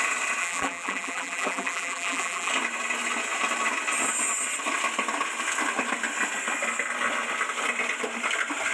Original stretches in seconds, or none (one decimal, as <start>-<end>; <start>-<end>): 0.0-0.4; 2.5-8.7

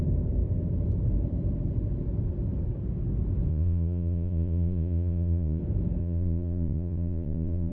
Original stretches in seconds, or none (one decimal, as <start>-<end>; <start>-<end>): 0.0-3.5; 5.6-6.0

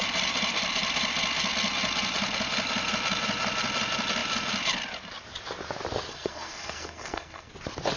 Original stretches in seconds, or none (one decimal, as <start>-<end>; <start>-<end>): 0.0-6.1; 7.5-8.0